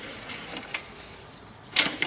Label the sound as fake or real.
real